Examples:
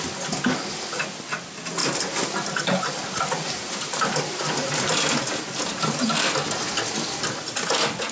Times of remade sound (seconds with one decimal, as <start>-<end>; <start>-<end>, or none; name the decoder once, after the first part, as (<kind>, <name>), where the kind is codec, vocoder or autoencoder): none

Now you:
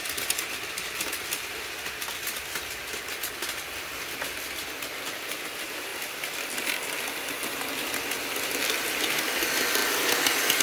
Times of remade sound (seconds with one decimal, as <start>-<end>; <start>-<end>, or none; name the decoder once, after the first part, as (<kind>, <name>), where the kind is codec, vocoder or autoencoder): none

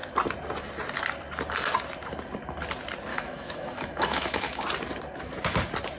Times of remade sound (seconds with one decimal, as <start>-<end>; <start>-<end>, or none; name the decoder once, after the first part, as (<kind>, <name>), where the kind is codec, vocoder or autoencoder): 3.1-4.6 (autoencoder, DAC-VAE)